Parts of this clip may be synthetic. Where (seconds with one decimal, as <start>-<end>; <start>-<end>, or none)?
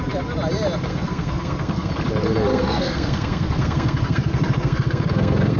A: 0.9-1.9; 2.5-5.6